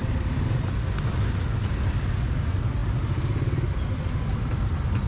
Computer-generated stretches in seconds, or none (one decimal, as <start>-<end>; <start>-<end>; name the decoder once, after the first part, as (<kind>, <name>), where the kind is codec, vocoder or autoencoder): none